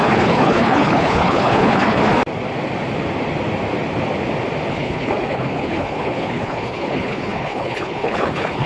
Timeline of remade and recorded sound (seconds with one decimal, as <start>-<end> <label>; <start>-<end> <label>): 0.0-2.0 remade; 2.0-4.7 recorded; 4.7-8.7 remade